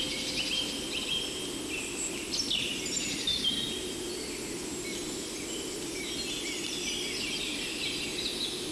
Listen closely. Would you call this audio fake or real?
real